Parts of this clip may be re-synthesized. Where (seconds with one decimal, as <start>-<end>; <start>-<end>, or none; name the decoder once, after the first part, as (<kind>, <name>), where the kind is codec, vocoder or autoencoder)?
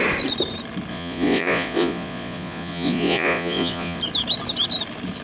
0.9-4.0 (vocoder, Vocos)